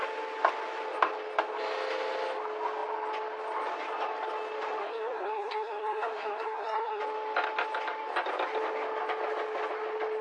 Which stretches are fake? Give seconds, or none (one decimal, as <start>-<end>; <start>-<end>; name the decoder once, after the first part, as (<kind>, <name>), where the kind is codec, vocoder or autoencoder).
4.8-7.0 (codec, SNAC)